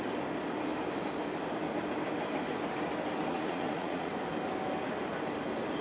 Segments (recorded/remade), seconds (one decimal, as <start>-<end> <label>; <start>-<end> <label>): 0.0-3.3 recorded; 3.3-4.1 remade; 4.1-5.8 recorded